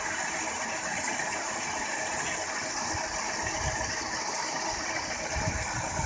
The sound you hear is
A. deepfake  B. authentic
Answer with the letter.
B